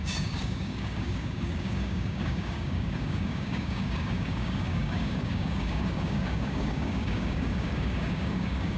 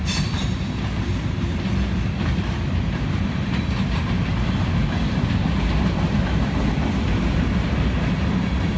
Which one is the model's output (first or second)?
first